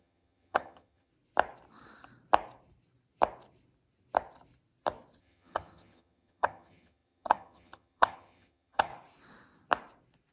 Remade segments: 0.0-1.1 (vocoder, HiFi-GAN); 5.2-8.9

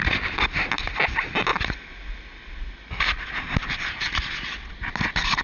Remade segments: none

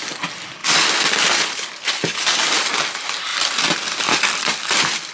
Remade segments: 0.6-2.9 (vocoder, BigVGAN v2); 3.3-5.1